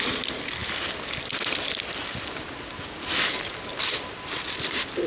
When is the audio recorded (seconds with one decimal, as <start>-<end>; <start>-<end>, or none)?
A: 0.0-5.1